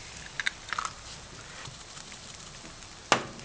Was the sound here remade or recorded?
recorded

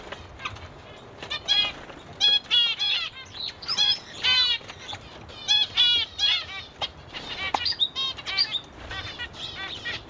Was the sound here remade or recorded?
recorded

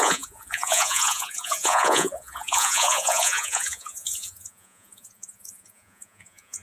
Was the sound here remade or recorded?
remade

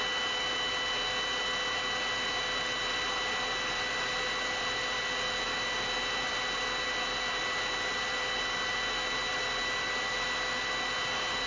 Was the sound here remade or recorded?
recorded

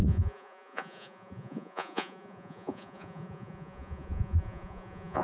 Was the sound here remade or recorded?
remade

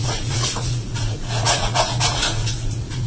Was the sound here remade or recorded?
remade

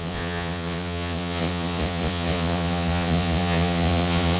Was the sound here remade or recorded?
remade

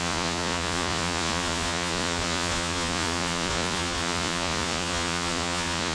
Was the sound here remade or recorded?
remade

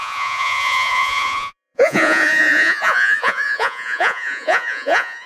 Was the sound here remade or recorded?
remade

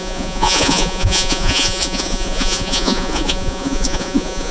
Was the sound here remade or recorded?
remade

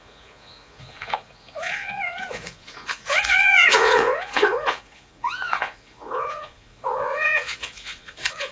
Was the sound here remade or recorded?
remade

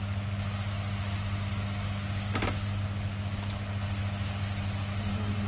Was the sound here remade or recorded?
recorded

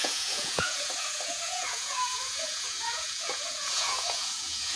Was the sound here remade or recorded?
remade